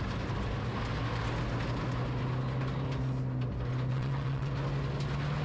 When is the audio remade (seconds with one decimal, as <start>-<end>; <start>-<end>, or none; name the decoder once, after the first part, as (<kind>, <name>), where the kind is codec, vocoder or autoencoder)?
3.9-4.5 (vocoder, WaveNeXt)